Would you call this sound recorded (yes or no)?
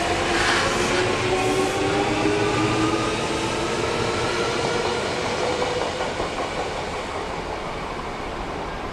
yes